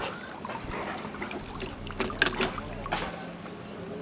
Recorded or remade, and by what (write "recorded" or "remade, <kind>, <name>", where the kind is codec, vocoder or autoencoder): recorded